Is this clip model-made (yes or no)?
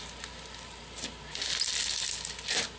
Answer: no